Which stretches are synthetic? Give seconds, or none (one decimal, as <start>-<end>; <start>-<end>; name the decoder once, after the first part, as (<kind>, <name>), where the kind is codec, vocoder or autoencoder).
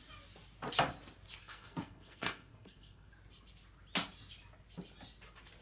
1.4-3.1 (codec, SNAC)